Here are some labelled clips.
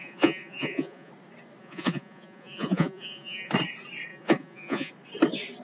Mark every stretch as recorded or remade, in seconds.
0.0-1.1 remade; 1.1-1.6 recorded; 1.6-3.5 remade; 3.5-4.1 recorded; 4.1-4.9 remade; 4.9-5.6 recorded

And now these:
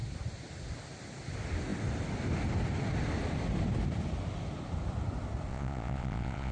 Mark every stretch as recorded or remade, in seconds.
0.0-5.5 recorded; 5.5-6.5 remade

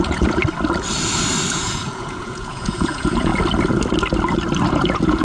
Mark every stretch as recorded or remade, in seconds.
0.0-0.4 remade; 0.4-1.5 recorded; 1.5-3.3 remade; 3.3-4.7 recorded; 4.7-5.2 remade

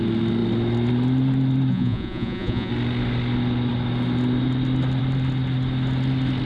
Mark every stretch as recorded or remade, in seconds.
0.0-1.7 recorded; 1.7-2.7 remade; 2.7-6.5 recorded

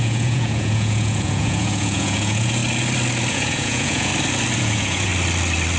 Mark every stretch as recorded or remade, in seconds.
0.0-2.6 remade; 2.6-3.3 recorded; 3.3-4.1 remade; 4.1-4.6 recorded; 4.6-5.1 remade; 5.1-5.8 recorded

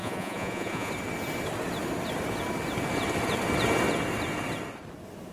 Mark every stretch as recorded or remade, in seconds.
0.0-0.9 remade; 0.9-5.3 recorded

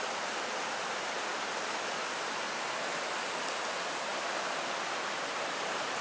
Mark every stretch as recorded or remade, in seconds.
0.0-6.0 recorded